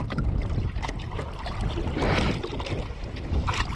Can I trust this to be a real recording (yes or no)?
yes